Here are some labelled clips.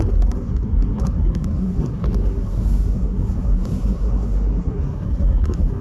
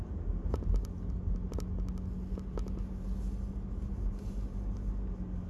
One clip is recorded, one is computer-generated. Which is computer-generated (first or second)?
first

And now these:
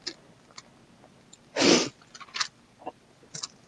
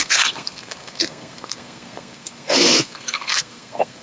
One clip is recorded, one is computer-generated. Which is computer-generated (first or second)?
second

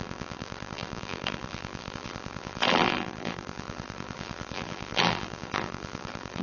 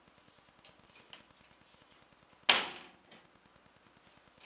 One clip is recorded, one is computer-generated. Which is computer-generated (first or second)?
first